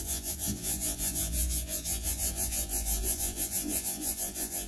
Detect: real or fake fake